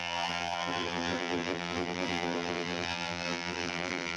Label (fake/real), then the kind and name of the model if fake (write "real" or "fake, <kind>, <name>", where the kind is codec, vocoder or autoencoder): fake, vocoder, BigVGAN v2